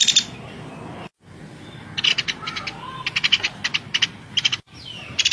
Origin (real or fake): real